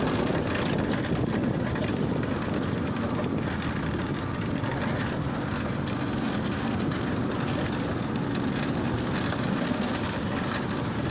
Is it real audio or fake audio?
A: real